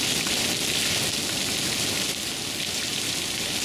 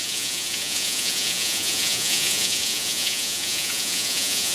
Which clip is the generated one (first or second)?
second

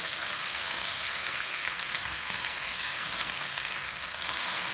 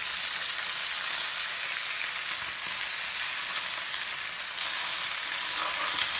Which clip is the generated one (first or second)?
first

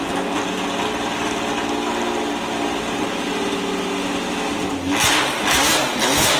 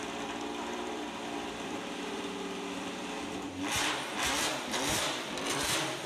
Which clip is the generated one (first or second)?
second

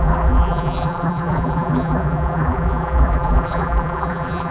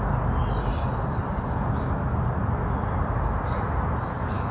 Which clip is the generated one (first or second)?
first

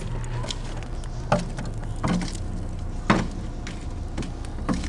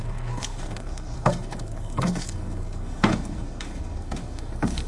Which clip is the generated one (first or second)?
second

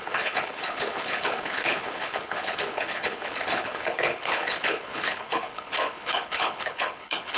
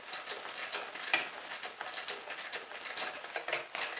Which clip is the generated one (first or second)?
first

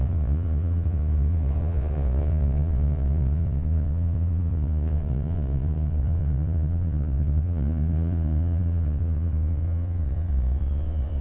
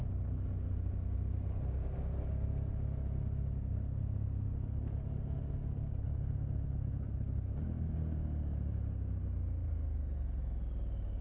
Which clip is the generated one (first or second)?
first